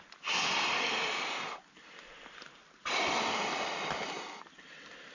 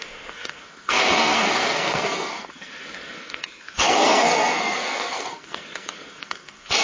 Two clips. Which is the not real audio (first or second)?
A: second